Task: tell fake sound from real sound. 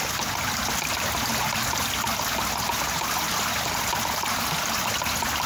real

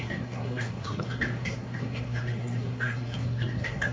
fake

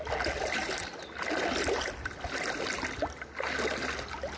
real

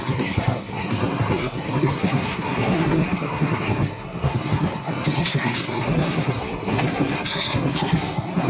fake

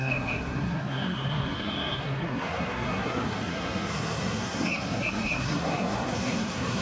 fake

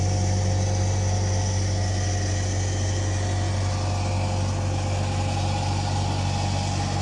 real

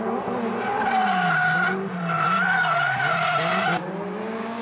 real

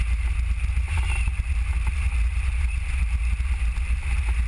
real